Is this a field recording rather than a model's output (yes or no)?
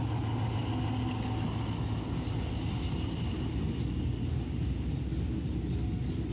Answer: yes